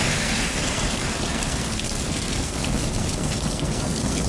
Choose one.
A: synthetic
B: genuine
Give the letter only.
A